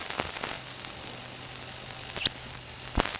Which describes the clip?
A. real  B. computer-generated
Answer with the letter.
A